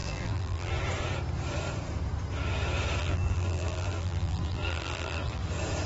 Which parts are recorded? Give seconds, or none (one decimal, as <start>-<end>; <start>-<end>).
0.7-3.0; 5.4-5.9